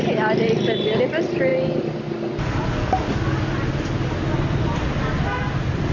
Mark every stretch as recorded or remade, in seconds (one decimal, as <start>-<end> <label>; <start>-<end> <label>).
0.0-5.9 recorded

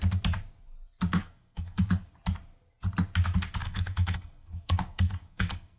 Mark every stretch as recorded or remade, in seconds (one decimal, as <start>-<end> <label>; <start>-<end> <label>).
0.0-1.2 recorded; 1.2-2.1 remade; 2.1-3.6 recorded; 3.6-5.8 remade

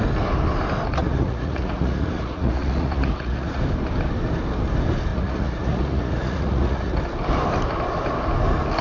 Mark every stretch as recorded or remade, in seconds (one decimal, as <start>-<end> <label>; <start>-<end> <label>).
0.0-1.0 recorded; 1.0-3.6 remade; 3.6-5.1 recorded; 5.1-7.0 remade; 7.0-8.8 recorded

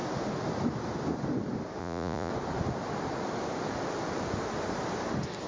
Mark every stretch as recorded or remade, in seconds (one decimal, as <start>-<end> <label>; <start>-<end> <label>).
0.0-1.8 recorded; 1.8-2.3 remade; 2.3-5.5 recorded

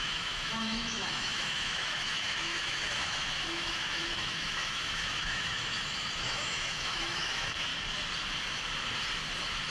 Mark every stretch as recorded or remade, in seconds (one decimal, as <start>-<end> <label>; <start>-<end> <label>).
0.0-7.7 remade; 7.7-9.7 recorded

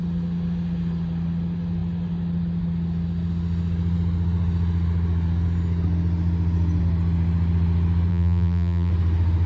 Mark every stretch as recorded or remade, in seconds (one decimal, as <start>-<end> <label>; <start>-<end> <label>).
0.0-8.1 recorded; 8.1-8.9 remade; 8.9-9.5 recorded

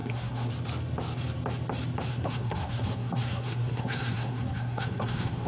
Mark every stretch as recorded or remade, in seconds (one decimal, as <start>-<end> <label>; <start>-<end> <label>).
0.0-0.5 remade; 0.5-2.1 recorded; 2.1-5.5 remade

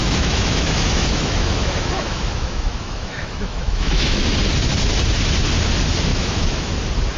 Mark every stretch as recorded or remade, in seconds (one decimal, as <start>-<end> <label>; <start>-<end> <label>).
0.0-4.3 remade; 4.3-6.1 recorded; 6.1-6.7 remade; 6.7-7.2 recorded